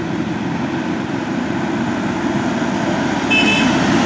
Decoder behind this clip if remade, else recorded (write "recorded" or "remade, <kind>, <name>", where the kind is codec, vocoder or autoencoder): remade, vocoder, BigVGAN v2